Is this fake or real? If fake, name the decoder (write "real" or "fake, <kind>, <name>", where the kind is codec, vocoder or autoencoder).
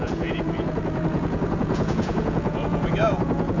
fake, vocoder, Vocos